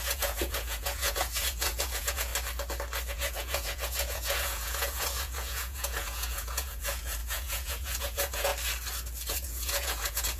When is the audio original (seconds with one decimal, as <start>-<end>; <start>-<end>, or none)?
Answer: 2.3-3.1; 8.5-9.3